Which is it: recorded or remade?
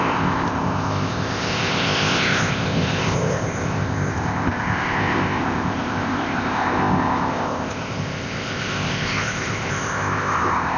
remade